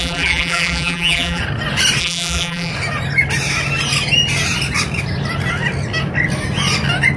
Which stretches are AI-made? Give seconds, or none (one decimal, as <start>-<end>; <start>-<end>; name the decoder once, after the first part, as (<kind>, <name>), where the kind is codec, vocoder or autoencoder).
0.0-1.4 (vocoder, BigVGAN v2); 2.0-2.7